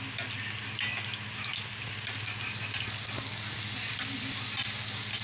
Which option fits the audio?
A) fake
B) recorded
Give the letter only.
B